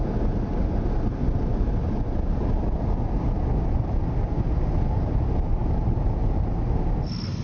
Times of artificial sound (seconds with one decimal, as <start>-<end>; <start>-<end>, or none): 5.6-6.9